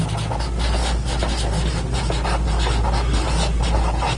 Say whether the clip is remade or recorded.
recorded